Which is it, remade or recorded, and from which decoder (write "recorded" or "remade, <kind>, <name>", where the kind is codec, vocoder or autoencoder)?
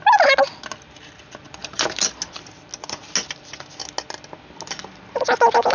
recorded